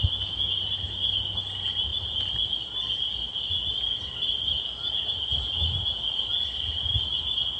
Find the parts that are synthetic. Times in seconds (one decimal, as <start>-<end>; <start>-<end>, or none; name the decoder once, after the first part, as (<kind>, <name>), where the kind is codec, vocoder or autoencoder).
none